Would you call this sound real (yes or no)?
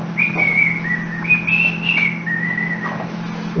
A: yes